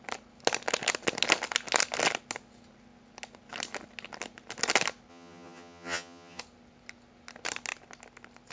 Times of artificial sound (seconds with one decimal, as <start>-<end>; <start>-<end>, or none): 5.1-6.4